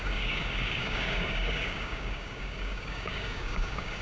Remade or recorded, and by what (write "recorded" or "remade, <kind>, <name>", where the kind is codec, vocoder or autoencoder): remade, codec, DAC